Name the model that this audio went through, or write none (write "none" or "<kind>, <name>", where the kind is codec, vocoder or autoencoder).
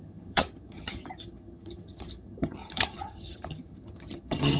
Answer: vocoder, HiFi-GAN